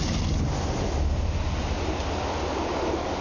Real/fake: real